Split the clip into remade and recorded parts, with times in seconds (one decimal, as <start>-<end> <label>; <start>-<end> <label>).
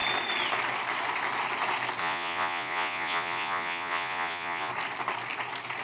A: 0.0-2.0 recorded; 2.0-4.7 remade; 4.7-5.8 recorded